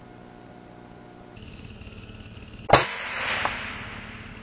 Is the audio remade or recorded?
recorded